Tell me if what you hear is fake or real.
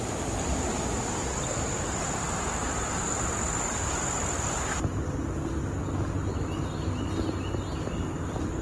real